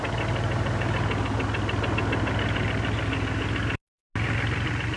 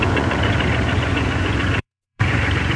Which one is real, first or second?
first